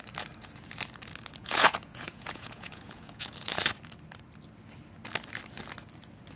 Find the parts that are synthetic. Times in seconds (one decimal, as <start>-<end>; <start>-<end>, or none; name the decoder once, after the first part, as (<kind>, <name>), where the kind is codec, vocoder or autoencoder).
1.4-3.5 (vocoder, Vocos)